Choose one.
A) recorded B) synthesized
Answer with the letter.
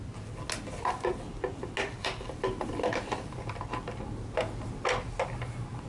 A